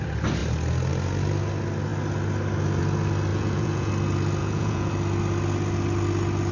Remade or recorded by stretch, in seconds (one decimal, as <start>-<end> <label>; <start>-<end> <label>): 0.0-3.3 recorded; 3.3-3.9 remade; 3.9-4.4 recorded; 4.4-4.9 remade; 4.9-6.5 recorded